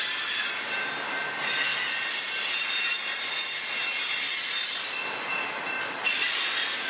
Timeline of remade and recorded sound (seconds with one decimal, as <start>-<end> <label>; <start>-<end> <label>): 0.0-6.9 recorded